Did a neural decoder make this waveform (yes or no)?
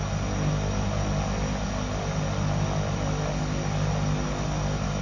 no